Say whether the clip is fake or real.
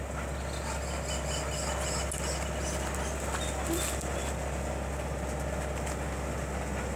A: real